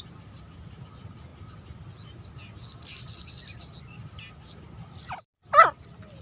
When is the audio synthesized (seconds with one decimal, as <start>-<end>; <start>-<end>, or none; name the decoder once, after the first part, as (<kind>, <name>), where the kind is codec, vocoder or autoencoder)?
none